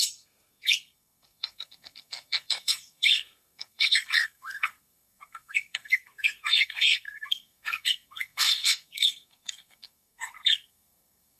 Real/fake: fake